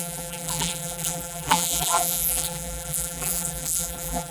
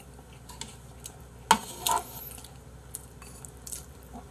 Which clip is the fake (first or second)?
first